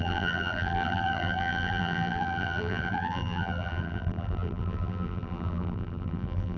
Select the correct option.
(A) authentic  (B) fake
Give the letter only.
B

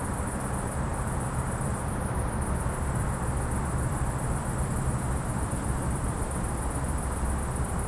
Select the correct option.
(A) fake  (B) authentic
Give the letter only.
A